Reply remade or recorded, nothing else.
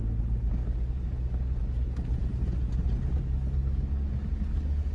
recorded